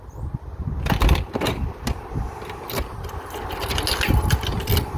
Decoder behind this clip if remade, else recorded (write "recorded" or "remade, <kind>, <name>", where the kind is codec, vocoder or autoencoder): recorded